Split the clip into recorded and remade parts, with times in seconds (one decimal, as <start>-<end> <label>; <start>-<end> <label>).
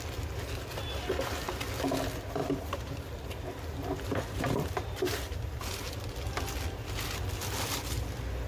0.0-2.4 recorded; 2.4-6.1 remade; 6.1-8.5 recorded